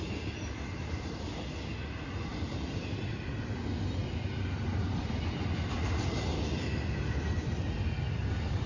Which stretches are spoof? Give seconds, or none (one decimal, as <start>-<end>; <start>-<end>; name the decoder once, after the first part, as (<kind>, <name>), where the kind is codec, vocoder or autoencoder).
none

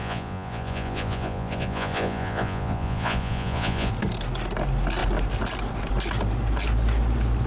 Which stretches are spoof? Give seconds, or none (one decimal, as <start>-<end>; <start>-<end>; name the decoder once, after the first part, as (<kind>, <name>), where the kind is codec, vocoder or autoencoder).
0.0-3.9 (vocoder, Vocos)

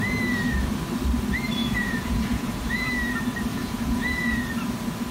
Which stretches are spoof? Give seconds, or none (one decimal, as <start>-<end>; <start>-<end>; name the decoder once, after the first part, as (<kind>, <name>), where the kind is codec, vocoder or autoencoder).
1.6-2.9 (vocoder, Vocos); 3.5-4.3

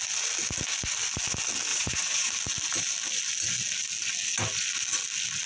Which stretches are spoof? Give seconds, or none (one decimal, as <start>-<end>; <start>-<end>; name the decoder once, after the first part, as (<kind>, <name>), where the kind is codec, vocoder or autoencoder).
1.7-2.3 (vocoder, Vocos)

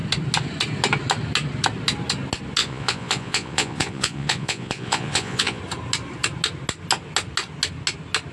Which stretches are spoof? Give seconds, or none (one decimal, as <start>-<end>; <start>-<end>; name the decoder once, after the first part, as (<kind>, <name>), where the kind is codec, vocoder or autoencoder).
2.6-5.6 (vocoder, Vocos)